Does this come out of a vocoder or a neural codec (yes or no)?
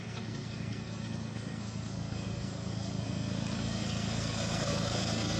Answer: yes